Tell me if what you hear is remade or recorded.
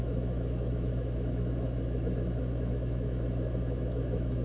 remade